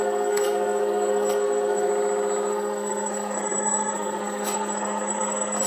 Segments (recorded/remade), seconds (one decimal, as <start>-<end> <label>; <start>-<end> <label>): 0.0-1.9 remade; 1.9-2.5 recorded; 2.5-5.7 remade